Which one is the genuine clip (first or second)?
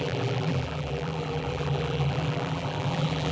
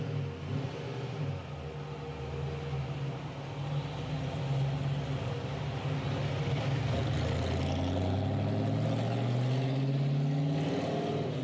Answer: second